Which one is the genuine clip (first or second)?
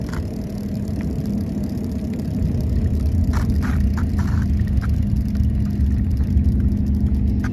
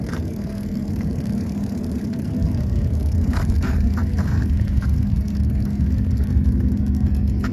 first